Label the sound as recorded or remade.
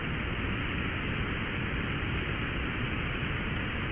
recorded